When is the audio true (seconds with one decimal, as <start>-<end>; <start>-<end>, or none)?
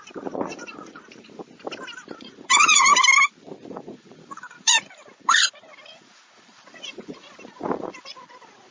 1.4-2.2; 2.9-3.7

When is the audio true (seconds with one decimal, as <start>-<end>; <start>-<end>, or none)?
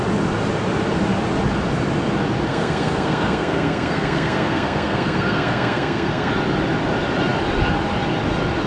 0.0-2.5; 6.3-8.7